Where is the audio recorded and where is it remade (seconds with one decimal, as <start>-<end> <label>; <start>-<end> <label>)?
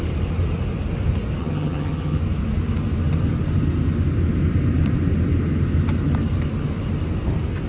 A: 0.0-1.4 recorded; 1.4-2.2 remade; 2.2-7.7 recorded